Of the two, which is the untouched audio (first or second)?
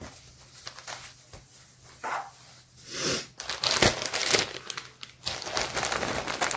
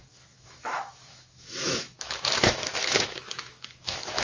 first